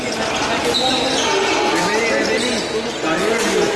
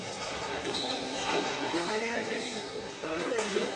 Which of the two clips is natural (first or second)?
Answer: first